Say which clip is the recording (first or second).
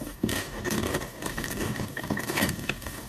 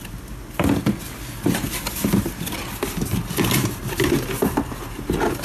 second